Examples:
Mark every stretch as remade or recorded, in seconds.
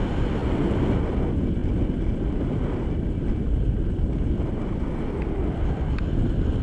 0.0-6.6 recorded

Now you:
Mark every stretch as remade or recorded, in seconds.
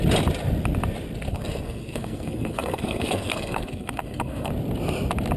0.0-1.3 recorded; 1.3-4.5 remade; 4.5-5.4 recorded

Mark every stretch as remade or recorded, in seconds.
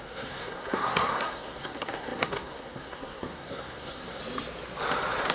0.0-4.2 remade; 4.2-5.3 recorded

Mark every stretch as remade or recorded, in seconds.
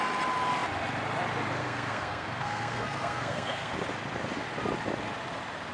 0.0-1.6 recorded; 1.6-3.7 remade; 3.7-5.7 recorded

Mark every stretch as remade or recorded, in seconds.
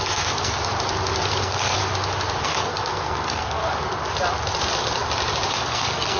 0.0-0.6 remade; 0.6-1.3 recorded; 1.3-1.8 remade; 1.8-2.4 recorded; 2.4-3.6 remade; 3.6-5.5 recorded; 5.5-6.2 remade